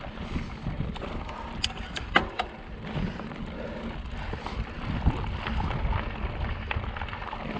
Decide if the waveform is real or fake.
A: real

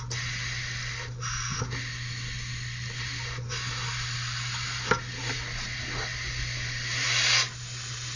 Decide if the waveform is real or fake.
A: real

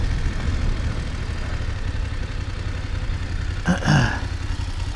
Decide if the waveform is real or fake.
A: real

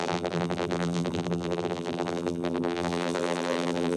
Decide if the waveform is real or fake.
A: fake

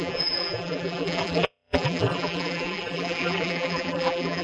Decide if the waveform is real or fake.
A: fake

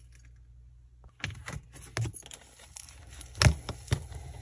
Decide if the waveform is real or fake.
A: real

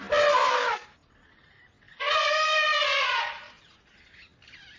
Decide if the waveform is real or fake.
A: real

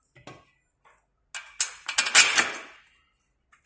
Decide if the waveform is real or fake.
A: real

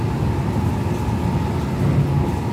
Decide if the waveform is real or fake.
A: real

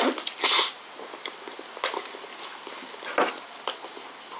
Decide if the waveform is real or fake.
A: real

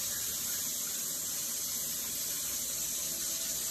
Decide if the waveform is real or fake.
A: real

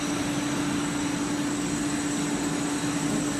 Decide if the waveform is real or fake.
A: real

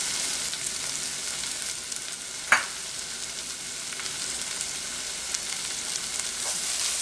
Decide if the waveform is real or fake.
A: real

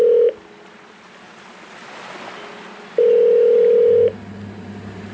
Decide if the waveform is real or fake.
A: real